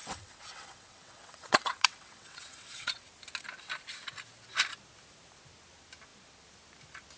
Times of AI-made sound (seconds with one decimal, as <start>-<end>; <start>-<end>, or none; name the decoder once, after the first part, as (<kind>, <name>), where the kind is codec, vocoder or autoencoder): 0.0-3.1 (vocoder, WaveNeXt)